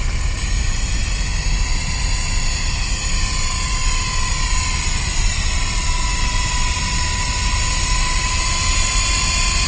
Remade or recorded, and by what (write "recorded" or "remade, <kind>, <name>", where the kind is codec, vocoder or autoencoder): recorded